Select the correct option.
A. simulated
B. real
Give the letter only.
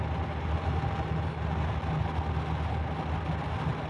B